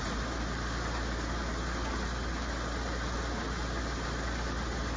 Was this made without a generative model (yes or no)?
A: yes